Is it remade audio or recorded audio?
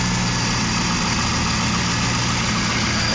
recorded